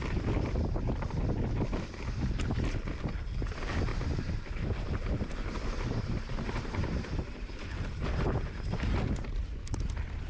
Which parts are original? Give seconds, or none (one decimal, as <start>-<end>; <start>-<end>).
0.0-3.9; 8.9-10.3